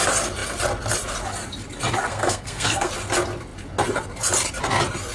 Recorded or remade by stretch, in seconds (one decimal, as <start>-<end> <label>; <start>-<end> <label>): 0.0-2.1 recorded; 2.1-2.9 remade; 2.9-5.1 recorded